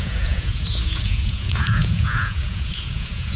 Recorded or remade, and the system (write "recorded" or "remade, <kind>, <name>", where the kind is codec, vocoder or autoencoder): remade, vocoder, Vocos